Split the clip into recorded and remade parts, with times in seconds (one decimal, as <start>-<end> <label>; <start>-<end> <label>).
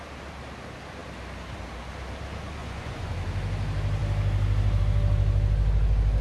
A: 0.0-2.6 recorded; 2.6-3.1 remade; 3.1-6.2 recorded